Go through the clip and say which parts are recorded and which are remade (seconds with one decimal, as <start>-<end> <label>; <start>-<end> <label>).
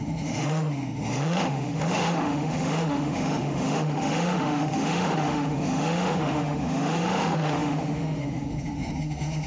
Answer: 0.0-9.5 remade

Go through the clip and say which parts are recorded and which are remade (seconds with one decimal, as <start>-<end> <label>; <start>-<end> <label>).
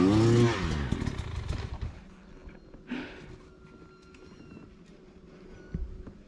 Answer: 0.0-6.3 recorded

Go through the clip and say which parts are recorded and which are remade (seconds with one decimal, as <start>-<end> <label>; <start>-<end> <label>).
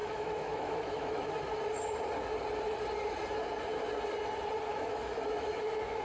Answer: 0.0-1.3 remade; 1.3-4.7 recorded; 4.7-6.0 remade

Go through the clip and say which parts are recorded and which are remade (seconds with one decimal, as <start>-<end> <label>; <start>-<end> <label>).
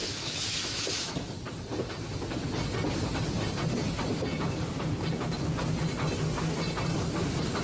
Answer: 0.0-1.3 remade; 1.3-7.6 recorded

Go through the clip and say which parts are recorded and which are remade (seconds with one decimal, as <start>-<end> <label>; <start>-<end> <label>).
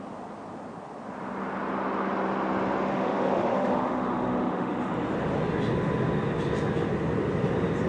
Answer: 0.0-2.9 recorded; 2.9-4.9 remade; 4.9-7.9 recorded